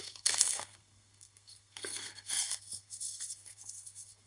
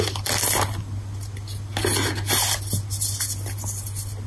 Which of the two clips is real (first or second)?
second